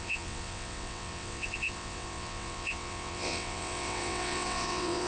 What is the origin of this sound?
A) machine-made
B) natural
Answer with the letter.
A